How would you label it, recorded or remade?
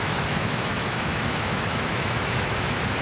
remade